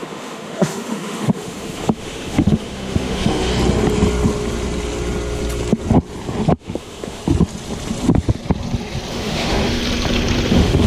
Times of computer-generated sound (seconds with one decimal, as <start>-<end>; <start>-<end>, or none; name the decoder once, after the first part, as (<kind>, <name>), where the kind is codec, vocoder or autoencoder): 0.0-3.5 (autoencoder, DAC-VAE); 6.6-7.2; 9.1-9.8; 10.5-10.9